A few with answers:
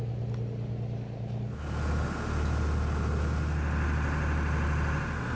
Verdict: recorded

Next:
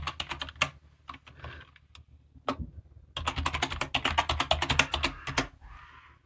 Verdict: recorded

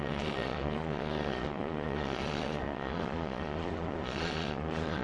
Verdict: remade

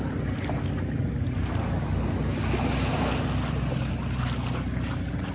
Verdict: recorded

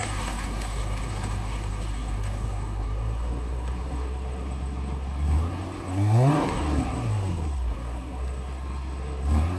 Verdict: remade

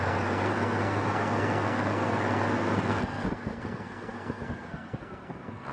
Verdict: remade